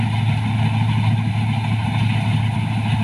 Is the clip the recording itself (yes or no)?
yes